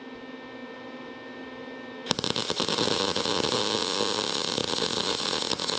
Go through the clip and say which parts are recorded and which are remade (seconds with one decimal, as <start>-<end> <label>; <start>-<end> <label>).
0.0-5.8 recorded